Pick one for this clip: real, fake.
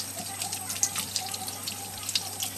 real